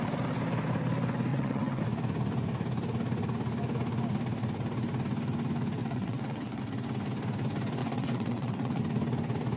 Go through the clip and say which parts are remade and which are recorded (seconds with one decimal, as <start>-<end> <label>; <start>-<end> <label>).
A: 0.0-1.3 recorded; 1.3-1.8 remade; 1.8-5.8 recorded; 5.8-6.6 remade; 6.6-7.8 recorded; 7.8-8.8 remade; 8.8-9.6 recorded